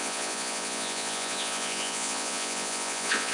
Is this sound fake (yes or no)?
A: yes